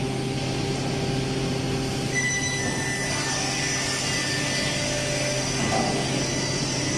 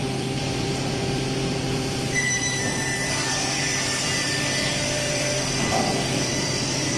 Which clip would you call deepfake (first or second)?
second